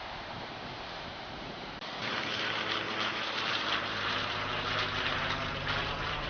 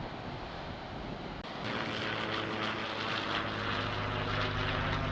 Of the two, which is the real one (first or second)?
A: second